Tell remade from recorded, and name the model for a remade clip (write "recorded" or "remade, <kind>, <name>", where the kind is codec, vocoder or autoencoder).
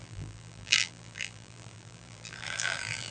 remade, vocoder, BigVGAN v2